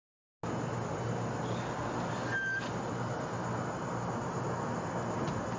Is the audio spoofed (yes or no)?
no